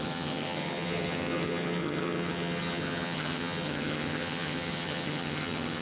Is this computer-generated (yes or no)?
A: yes